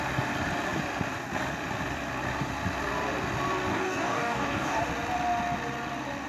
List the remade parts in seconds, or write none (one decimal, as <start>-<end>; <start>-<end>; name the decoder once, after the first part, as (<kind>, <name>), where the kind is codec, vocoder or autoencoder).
3.7-4.8 (codec, DAC)